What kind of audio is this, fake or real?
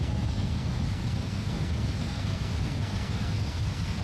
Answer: fake